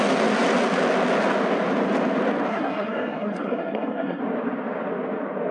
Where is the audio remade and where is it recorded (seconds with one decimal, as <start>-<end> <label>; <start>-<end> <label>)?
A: 0.0-2.5 recorded; 2.5-4.2 remade; 4.2-5.5 recorded

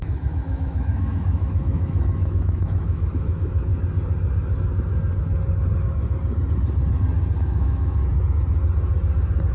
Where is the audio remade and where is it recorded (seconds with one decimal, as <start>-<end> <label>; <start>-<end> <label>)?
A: 0.0-3.7 remade; 3.7-7.4 recorded; 7.4-8.0 remade; 8.0-9.5 recorded

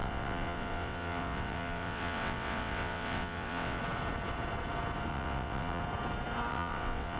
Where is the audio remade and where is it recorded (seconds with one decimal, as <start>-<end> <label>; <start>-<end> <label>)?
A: 0.0-3.8 remade; 3.8-5.1 recorded; 5.1-5.8 remade; 5.8-6.5 recorded; 6.5-7.2 remade

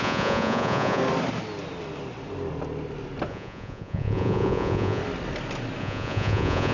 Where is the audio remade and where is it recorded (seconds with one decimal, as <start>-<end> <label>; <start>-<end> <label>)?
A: 0.0-1.0 remade; 1.0-3.3 recorded; 3.3-5.0 remade; 5.0-5.8 recorded; 5.8-6.7 remade